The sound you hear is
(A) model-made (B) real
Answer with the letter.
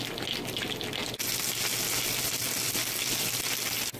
B